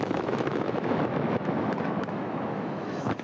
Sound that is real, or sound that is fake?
fake